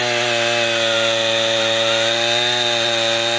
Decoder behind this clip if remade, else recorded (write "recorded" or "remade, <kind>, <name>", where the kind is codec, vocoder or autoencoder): recorded